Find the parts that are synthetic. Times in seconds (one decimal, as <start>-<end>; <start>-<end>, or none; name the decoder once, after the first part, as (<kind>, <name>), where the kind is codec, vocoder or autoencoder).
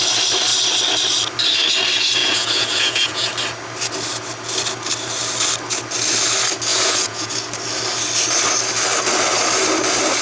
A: 2.2-3.3 (vocoder, Vocos); 6.7-7.3